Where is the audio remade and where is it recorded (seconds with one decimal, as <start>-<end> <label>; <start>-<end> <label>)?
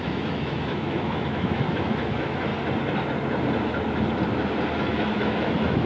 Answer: 0.0-2.5 remade; 2.5-4.8 recorded; 4.8-5.9 remade